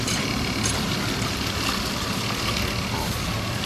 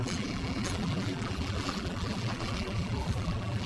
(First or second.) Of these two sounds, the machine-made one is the second